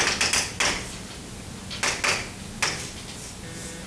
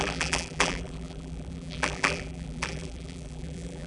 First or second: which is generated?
second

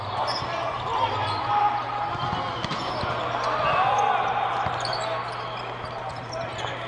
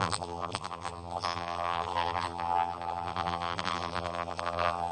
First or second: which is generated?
second